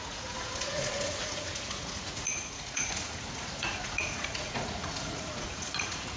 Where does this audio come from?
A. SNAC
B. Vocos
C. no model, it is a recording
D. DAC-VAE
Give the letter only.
B